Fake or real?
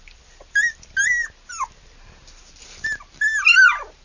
real